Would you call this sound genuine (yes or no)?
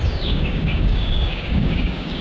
no